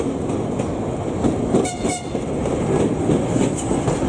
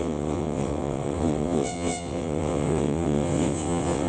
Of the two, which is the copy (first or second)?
second